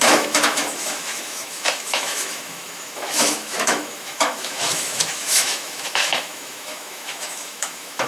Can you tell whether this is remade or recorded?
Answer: remade